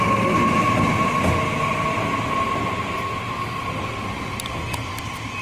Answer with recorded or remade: recorded